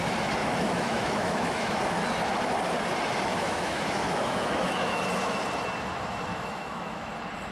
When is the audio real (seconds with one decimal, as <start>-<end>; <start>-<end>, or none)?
0.0-0.4; 1.8-3.3; 5.0-6.3; 7.1-7.5